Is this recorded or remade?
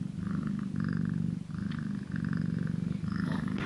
recorded